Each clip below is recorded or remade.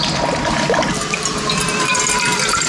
recorded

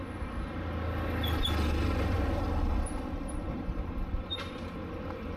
recorded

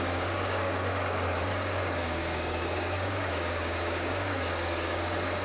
remade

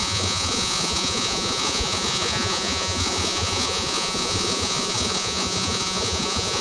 remade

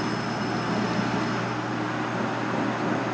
recorded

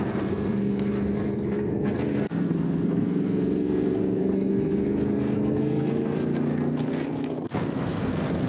remade